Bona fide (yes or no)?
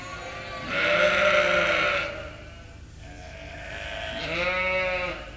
yes